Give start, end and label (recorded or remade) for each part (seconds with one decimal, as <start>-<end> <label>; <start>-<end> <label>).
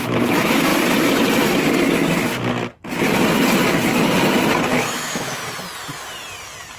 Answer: 0.0-0.7 remade; 0.7-4.7 recorded; 4.7-5.4 remade; 5.4-6.8 recorded